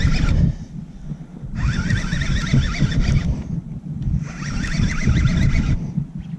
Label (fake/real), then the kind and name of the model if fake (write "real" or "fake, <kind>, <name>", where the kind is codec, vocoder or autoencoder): real